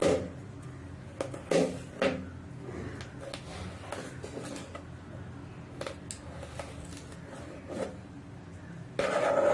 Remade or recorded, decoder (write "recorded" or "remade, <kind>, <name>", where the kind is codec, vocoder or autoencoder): recorded